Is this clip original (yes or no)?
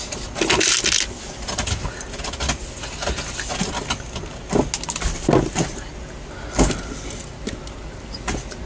yes